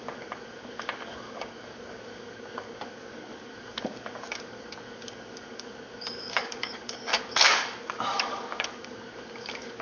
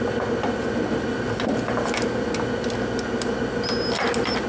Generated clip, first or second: first